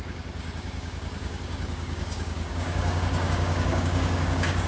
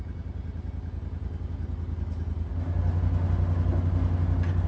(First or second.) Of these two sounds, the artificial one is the first